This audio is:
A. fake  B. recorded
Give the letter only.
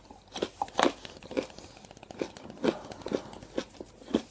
B